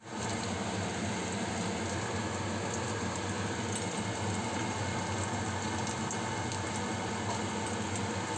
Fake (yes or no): no